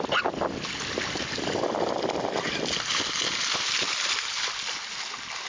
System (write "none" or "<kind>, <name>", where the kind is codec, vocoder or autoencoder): none